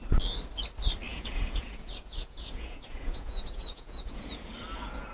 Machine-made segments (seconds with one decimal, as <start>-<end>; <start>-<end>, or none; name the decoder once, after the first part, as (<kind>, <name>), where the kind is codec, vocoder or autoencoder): 1.1-4.2 (vocoder, Vocos)